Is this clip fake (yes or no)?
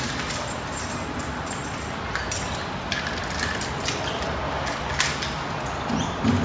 no